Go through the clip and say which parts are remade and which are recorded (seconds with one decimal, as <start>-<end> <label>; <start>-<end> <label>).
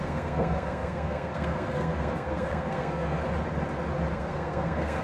0.0-3.2 remade; 3.2-4.1 recorded; 4.1-5.0 remade